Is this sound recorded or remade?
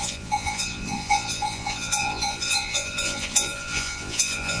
remade